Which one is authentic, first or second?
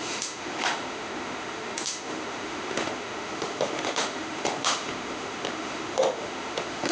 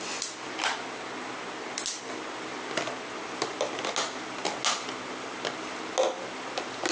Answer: second